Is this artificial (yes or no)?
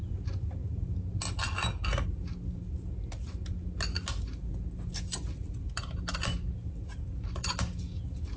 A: no